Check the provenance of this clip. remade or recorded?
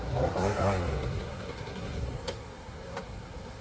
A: remade